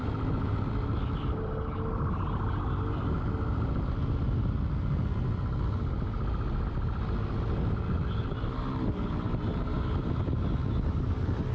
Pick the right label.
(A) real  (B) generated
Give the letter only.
A